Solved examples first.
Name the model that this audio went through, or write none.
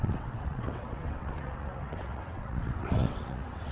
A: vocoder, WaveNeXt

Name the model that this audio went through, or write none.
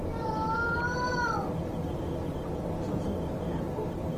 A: none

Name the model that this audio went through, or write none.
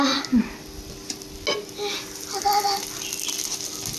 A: none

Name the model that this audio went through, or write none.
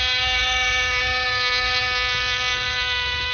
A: autoencoder, DAC-VAE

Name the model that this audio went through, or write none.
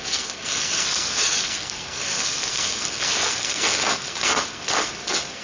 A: codec, SNAC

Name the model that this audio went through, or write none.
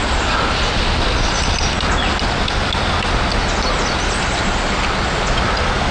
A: none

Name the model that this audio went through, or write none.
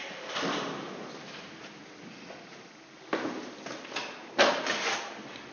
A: none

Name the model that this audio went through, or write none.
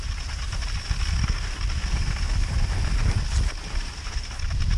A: none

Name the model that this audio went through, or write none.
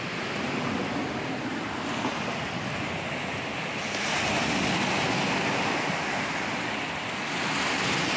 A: none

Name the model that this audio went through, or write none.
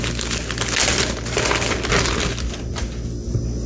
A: none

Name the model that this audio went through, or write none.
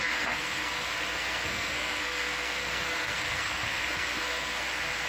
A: codec, SNAC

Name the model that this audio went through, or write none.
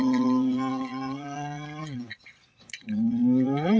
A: vocoder, Vocos